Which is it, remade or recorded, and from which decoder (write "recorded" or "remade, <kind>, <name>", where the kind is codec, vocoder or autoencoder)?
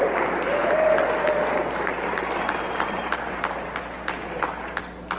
recorded